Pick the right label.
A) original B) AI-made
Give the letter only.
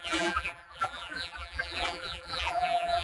B